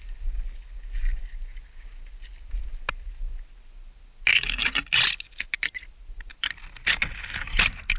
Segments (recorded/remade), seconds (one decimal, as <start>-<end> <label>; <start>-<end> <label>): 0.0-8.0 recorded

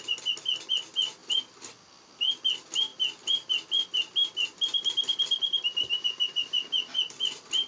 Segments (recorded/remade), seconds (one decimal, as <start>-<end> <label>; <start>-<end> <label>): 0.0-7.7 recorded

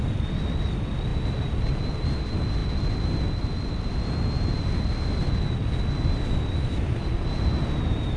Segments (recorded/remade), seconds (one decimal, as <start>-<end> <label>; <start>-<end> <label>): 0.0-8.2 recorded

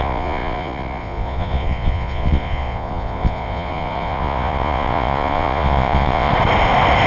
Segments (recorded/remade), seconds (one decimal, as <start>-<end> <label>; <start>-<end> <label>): 0.0-6.3 remade; 6.3-7.1 recorded

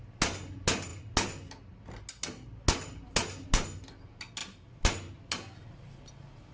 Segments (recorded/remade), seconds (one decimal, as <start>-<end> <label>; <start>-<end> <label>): 0.0-6.5 recorded

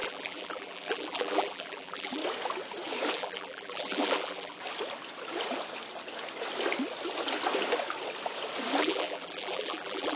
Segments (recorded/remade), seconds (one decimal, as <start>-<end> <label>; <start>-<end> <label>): 0.0-2.2 remade; 2.2-3.1 recorded; 3.1-4.6 remade; 4.6-8.8 recorded; 8.8-10.2 remade

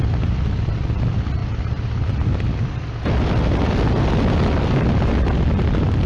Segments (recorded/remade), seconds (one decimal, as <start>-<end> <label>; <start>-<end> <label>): 0.0-6.1 recorded

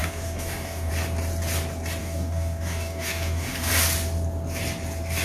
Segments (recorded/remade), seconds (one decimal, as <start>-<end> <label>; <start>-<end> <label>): 0.0-0.9 remade; 0.9-2.0 recorded; 2.0-3.7 remade; 3.7-5.2 recorded